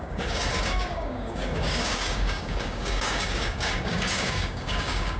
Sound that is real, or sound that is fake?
fake